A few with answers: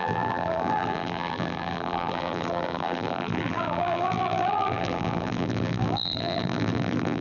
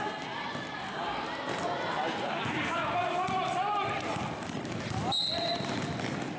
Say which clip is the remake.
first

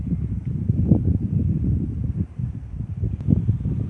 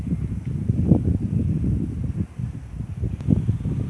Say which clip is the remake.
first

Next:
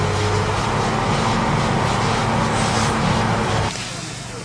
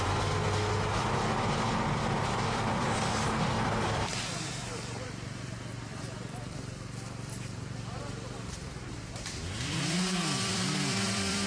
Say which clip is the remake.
second